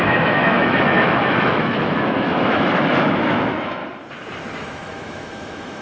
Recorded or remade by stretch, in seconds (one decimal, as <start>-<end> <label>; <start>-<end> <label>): 0.0-3.8 remade; 3.8-4.6 recorded; 4.6-5.8 remade